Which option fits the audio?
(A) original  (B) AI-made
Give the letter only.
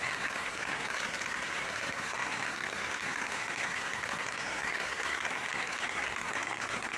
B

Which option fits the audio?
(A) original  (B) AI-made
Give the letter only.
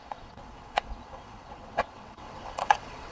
B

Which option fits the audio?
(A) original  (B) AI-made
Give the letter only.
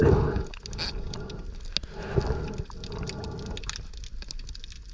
A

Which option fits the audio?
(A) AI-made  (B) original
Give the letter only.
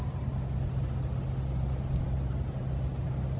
B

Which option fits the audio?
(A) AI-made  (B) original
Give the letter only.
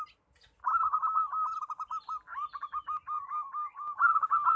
B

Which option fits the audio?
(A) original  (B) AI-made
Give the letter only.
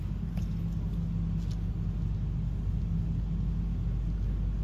A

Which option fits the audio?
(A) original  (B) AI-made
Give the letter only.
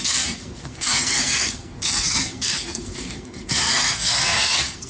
B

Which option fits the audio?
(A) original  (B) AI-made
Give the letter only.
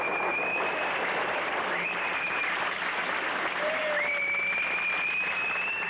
B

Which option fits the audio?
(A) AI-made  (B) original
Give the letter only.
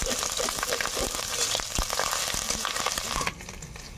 B